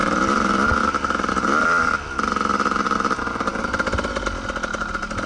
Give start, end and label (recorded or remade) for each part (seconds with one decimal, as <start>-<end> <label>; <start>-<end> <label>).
0.0-5.3 recorded